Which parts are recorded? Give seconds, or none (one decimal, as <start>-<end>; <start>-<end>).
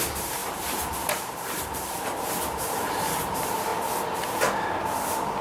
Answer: 3.7-5.4